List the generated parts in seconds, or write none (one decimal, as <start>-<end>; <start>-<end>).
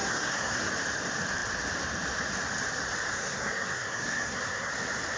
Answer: 0.0-0.7; 3.1-4.7